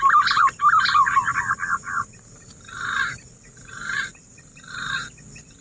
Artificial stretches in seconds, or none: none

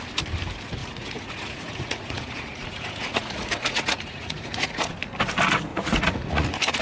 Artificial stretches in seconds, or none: 0.8-4.9 (vocoder, Vocos); 5.7-6.8